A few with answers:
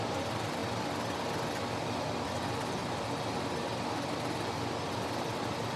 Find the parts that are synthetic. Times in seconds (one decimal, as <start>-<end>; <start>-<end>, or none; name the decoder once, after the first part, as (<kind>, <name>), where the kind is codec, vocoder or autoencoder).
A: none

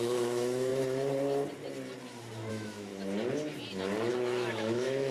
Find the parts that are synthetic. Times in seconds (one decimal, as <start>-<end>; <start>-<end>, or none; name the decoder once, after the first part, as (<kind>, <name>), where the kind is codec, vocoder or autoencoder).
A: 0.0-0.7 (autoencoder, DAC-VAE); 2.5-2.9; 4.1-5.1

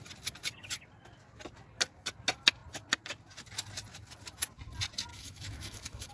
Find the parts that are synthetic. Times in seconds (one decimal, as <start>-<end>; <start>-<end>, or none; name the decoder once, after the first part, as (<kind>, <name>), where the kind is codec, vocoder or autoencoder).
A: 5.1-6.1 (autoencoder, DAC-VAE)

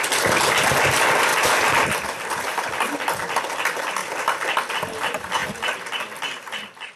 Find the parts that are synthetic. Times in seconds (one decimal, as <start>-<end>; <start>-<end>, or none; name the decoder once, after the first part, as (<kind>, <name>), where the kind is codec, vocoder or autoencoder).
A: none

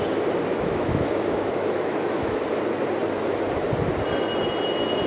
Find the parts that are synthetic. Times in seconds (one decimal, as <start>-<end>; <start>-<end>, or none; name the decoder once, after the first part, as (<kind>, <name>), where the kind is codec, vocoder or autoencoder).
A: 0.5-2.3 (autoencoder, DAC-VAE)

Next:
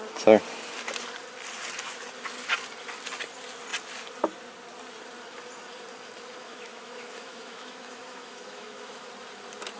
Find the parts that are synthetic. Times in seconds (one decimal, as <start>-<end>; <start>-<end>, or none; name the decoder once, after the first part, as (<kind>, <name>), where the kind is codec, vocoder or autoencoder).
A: 6.4-9.1 (autoencoder, DAC-VAE)